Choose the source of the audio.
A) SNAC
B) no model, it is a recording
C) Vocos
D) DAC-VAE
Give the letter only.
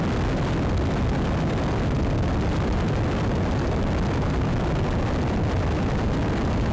B